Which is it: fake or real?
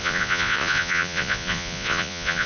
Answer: fake